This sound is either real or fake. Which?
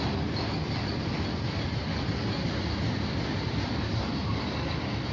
real